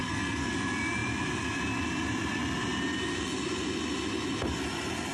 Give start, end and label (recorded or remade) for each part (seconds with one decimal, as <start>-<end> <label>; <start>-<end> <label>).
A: 0.0-0.5 remade; 0.5-5.1 recorded